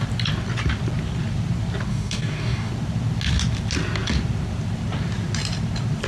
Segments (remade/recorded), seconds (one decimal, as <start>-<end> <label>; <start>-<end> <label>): 0.0-1.9 recorded; 1.9-2.7 remade; 2.7-6.1 recorded